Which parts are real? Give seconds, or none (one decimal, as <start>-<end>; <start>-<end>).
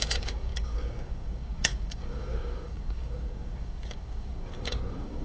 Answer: none